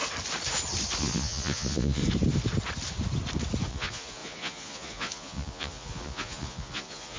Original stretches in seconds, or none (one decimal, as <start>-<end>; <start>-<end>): 0.0-1.0; 2.0-3.7